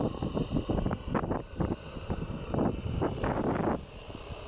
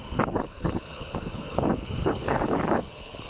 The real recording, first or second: first